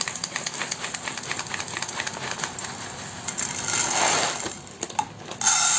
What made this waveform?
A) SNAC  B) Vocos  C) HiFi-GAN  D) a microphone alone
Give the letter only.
D